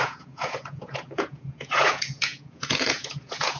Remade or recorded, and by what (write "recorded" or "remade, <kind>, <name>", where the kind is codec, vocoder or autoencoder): remade, vocoder, Vocos